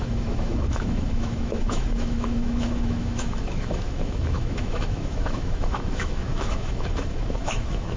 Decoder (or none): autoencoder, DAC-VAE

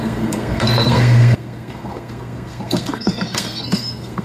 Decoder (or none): codec, SNAC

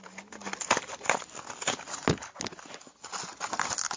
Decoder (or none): none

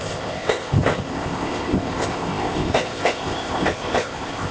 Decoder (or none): codec, ZipCodec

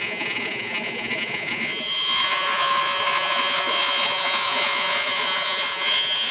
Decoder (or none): vocoder, Vocos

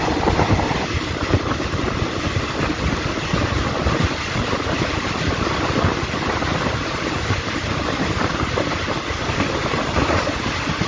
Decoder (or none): vocoder, BigVGAN v2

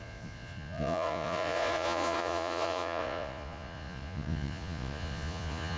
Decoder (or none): vocoder, Vocos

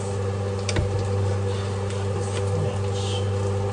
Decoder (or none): none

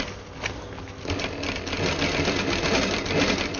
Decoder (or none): none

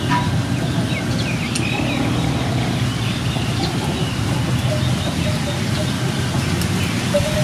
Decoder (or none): none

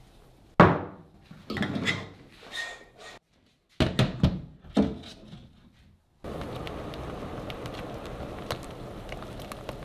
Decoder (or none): none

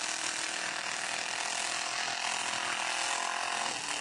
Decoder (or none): none